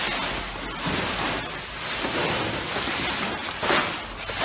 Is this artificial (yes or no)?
no